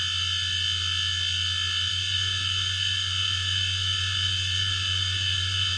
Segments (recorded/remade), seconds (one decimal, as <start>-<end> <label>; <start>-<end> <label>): 0.0-1.9 recorded; 1.9-5.8 remade